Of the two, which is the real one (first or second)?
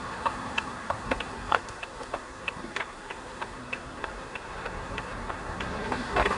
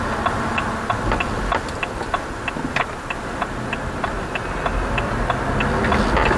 second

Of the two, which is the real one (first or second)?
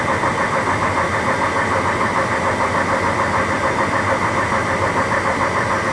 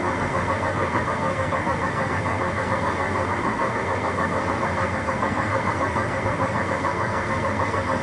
first